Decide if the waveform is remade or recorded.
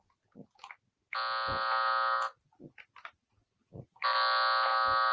recorded